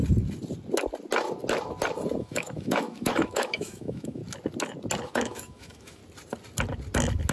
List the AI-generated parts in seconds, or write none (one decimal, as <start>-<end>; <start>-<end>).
2.2-4.2; 5.0-6.0